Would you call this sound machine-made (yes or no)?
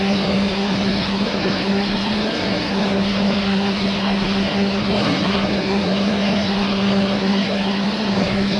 yes